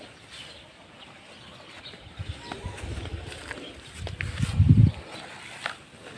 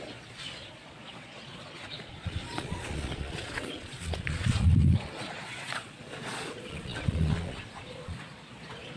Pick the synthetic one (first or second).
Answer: second